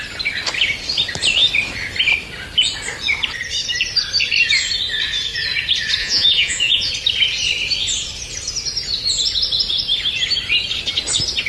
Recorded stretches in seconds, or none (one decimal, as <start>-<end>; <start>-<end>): 0.0-6.0; 6.9-11.5